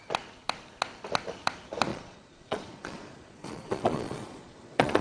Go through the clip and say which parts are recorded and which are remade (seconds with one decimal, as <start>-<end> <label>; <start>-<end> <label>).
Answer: 0.0-1.9 recorded; 1.9-5.0 remade